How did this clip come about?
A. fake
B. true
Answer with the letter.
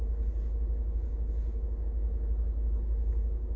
B